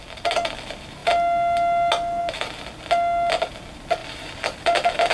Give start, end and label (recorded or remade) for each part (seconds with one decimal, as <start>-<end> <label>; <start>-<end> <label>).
0.0-4.0 recorded; 4.0-5.1 remade